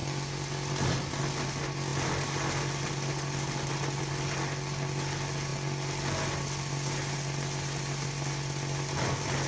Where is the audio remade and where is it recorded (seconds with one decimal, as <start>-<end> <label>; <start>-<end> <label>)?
0.0-9.5 recorded